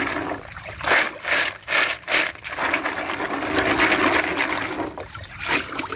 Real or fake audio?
real